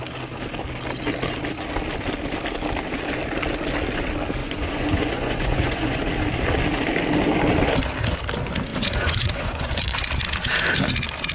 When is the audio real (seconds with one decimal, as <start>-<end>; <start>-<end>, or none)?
0.0-4.4; 6.0-8.7; 10.1-11.3